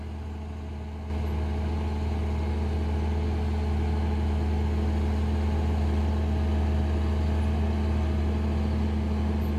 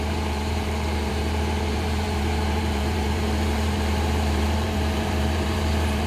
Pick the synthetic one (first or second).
second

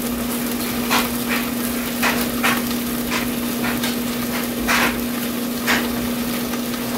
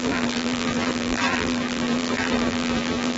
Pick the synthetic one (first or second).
second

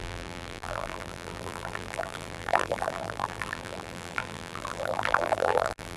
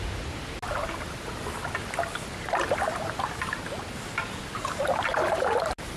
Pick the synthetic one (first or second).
first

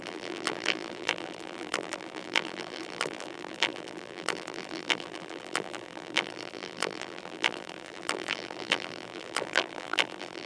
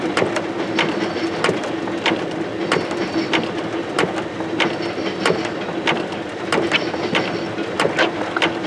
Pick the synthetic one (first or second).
first